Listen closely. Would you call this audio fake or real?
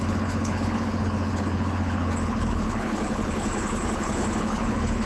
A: fake